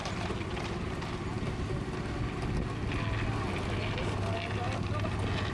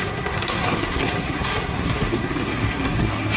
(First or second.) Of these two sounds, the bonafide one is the first